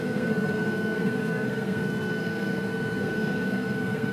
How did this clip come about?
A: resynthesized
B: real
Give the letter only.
A